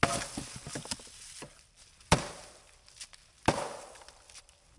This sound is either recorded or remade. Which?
recorded